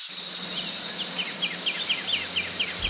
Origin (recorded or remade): recorded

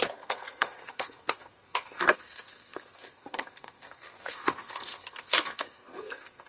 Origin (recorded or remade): remade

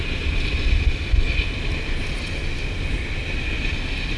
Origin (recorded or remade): recorded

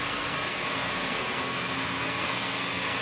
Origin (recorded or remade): remade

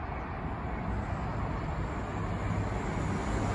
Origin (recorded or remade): recorded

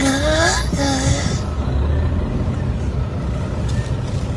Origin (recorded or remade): recorded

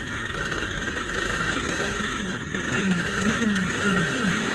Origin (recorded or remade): remade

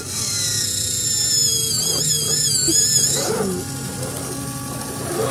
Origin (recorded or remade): recorded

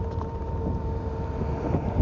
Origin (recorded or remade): recorded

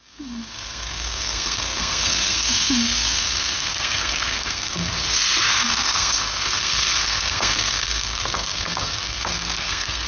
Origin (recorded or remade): remade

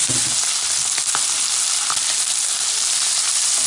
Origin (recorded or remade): recorded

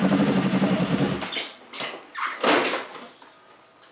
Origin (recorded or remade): recorded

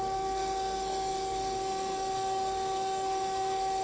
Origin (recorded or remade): remade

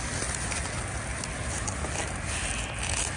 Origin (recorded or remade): recorded